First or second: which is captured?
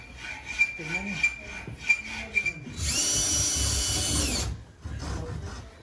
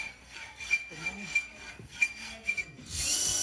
first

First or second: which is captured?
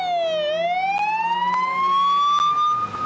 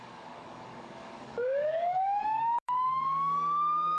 first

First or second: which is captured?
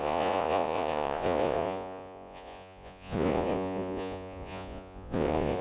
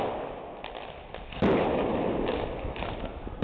second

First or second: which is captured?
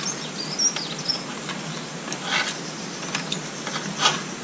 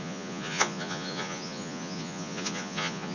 first